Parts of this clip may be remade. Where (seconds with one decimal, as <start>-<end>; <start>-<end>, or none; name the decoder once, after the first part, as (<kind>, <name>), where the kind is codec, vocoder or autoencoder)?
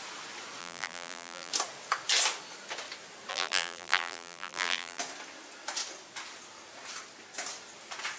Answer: 0.6-1.5 (vocoder, BigVGAN v2); 3.3-5.0